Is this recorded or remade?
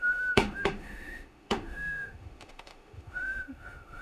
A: remade